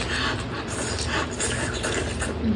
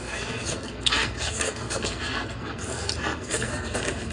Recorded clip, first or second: first